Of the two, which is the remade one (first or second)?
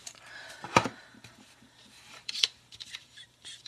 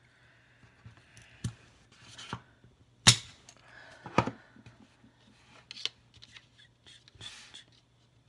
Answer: first